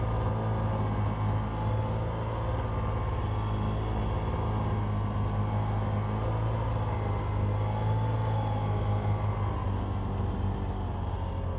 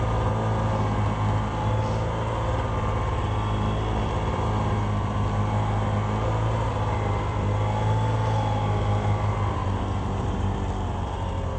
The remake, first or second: second